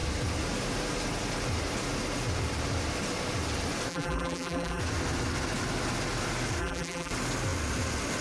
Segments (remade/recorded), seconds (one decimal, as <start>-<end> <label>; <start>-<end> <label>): 0.0-3.9 recorded; 3.9-4.8 remade; 4.8-6.6 recorded; 6.6-7.1 remade; 7.1-8.2 recorded